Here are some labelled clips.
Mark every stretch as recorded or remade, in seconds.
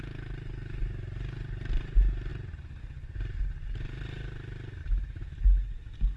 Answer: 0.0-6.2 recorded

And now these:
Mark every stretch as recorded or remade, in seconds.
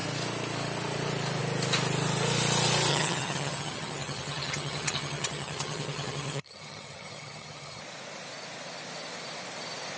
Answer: 0.0-2.9 recorded; 2.9-7.8 remade; 7.8-10.0 recorded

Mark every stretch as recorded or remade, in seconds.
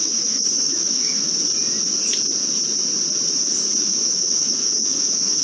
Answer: 0.0-1.3 remade; 1.3-3.8 recorded; 3.8-5.4 remade